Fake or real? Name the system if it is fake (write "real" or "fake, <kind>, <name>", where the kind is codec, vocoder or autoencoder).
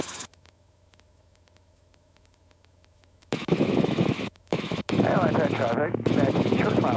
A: fake, autoencoder, DAC-VAE